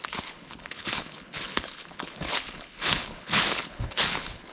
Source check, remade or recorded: remade